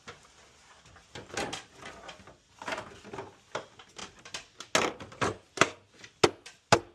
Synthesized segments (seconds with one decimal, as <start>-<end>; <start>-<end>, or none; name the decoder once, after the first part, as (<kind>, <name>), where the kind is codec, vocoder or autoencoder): none